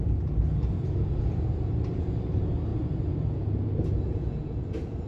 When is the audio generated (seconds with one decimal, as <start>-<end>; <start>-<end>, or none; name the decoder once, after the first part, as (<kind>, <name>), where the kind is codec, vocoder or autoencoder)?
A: 0.5-2.2 (vocoder, Vocos); 2.7-5.1